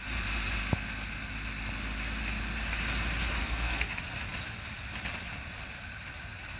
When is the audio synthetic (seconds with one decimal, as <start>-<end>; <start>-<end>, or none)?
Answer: 3.4-3.9